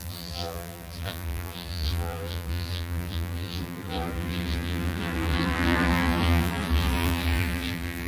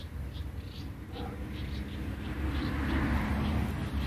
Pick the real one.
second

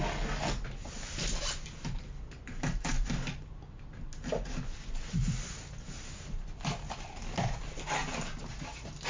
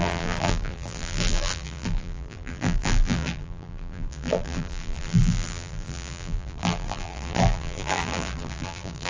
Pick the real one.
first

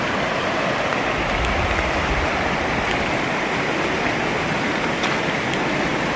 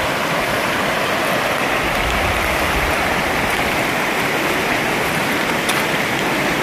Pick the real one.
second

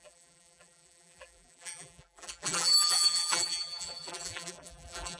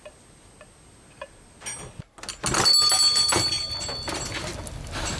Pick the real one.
second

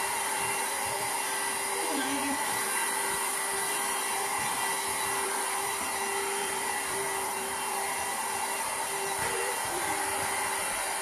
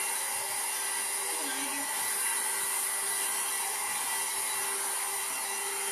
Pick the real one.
second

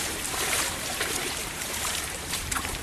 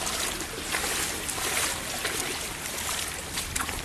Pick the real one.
second